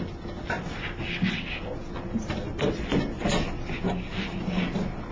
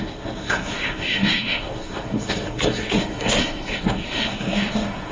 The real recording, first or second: first